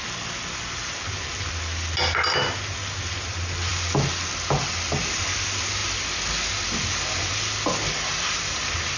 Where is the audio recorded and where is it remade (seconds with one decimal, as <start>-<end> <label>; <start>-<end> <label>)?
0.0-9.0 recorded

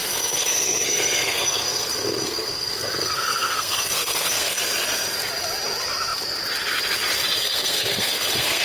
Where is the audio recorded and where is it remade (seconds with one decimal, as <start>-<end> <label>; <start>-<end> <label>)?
0.0-4.6 remade; 4.6-7.4 recorded; 7.4-8.6 remade

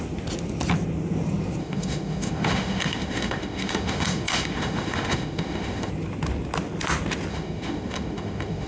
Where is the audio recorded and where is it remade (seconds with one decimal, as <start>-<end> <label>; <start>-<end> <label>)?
0.0-1.6 recorded; 1.6-5.9 remade; 5.9-7.3 recorded; 7.3-8.7 remade